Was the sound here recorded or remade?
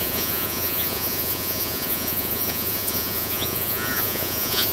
remade